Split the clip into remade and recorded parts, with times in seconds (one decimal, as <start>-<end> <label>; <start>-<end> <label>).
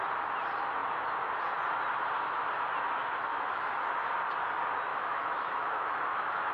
0.0-3.3 recorded; 3.3-4.0 remade; 4.0-4.9 recorded; 4.9-6.5 remade